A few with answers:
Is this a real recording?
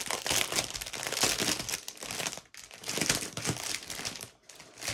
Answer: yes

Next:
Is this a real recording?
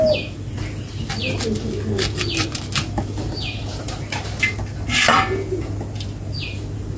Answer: yes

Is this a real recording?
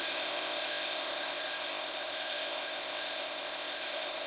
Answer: no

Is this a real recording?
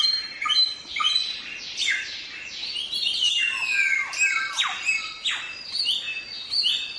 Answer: yes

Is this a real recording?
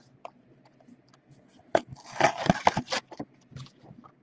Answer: no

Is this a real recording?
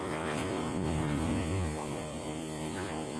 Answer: no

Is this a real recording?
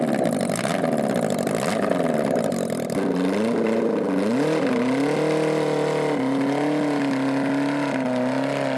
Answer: yes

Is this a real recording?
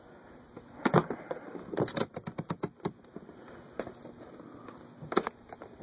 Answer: yes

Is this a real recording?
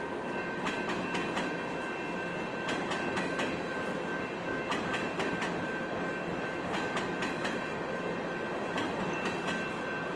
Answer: yes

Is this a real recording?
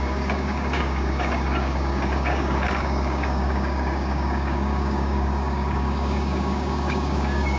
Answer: no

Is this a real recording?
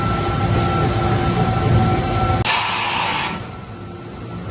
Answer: yes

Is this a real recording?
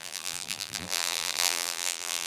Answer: no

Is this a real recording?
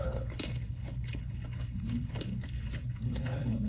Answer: no